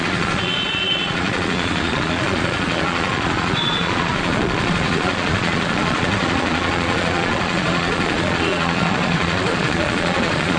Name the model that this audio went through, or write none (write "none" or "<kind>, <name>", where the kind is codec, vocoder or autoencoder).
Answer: vocoder, Vocos